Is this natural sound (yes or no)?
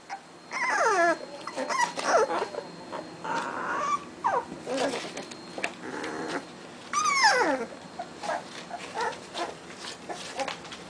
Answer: yes